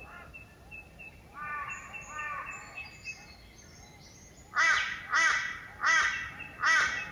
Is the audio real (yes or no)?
yes